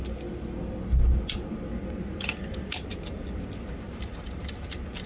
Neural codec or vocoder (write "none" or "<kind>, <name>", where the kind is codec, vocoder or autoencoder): none